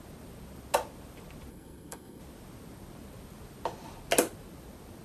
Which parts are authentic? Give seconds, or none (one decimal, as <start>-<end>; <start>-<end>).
0.0-1.5; 2.2-5.0